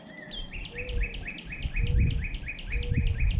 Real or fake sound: real